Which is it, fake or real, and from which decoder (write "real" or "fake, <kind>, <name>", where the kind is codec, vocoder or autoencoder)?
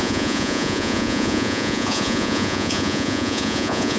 fake, vocoder, Vocos